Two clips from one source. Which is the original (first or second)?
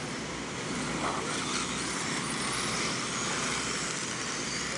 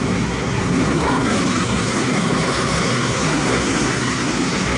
first